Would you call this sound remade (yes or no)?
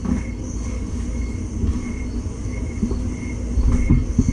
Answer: no